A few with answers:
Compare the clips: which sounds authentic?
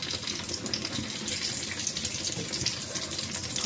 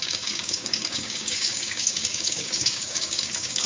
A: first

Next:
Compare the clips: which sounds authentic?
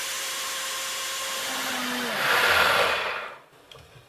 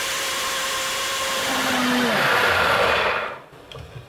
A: first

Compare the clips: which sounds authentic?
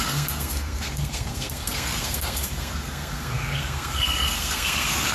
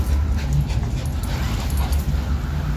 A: second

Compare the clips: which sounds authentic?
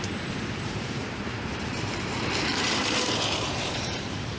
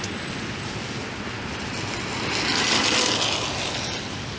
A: second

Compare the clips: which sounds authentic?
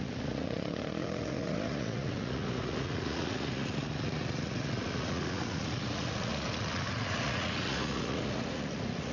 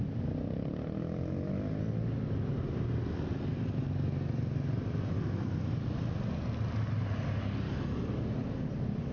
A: second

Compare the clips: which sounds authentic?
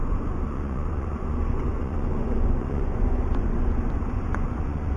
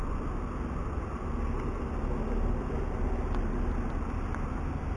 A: second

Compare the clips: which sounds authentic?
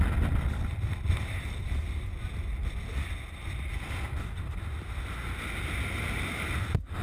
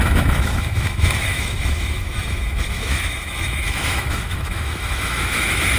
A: first